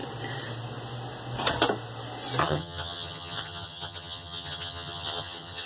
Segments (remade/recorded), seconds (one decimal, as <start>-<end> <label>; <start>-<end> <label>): 0.0-2.4 recorded; 2.4-5.7 remade